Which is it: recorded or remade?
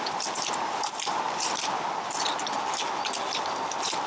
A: recorded